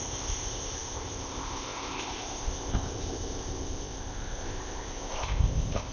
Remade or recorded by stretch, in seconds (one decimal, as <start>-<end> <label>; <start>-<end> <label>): 0.0-5.9 remade